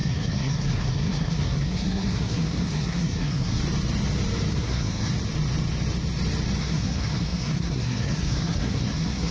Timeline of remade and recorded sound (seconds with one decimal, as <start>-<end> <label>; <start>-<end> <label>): 0.0-3.6 remade; 3.6-4.5 recorded; 4.5-5.1 remade; 5.1-6.6 recorded; 6.6-9.3 remade